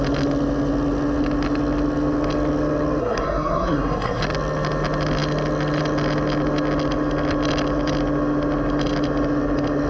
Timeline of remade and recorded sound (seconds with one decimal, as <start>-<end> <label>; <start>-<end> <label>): 0.0-3.0 recorded; 3.0-4.2 remade; 4.2-9.9 recorded